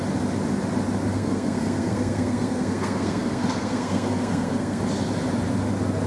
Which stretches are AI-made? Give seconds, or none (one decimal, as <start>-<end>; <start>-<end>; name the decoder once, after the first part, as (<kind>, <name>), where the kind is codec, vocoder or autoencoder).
1.1-4.8 (codec, SNAC)